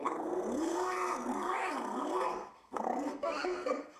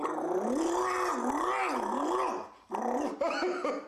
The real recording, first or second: second